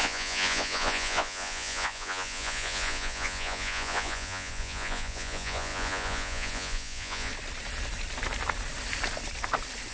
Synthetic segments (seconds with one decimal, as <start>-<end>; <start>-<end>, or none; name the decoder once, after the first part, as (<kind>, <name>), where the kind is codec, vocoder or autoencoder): 0.0-7.3 (vocoder, Vocos)